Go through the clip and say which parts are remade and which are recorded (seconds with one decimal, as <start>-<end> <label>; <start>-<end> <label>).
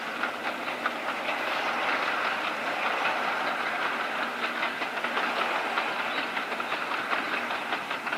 0.0-8.2 recorded